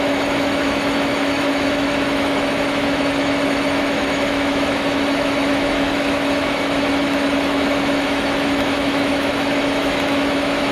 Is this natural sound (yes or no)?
no